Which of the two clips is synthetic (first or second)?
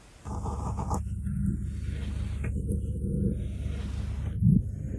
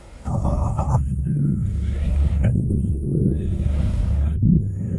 second